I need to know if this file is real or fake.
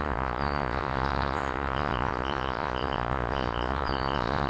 fake